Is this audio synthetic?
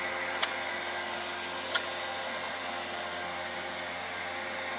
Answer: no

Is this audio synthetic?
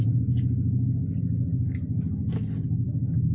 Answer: no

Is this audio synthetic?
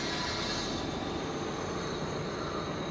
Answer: no